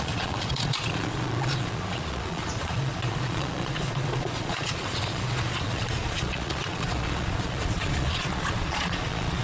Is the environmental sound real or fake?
fake